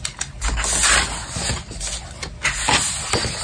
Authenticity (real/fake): real